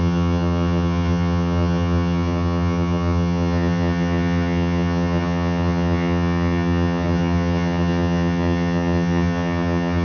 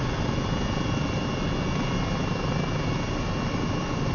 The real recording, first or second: second